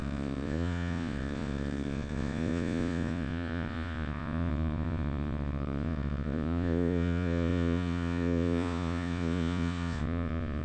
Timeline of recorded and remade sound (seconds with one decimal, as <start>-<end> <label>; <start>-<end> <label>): 0.0-10.6 remade